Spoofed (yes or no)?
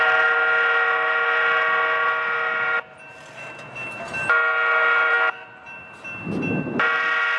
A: no